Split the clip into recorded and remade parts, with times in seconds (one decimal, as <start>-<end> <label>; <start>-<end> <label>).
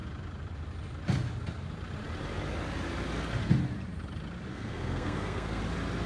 0.0-4.5 recorded; 4.5-5.6 remade; 5.6-6.1 recorded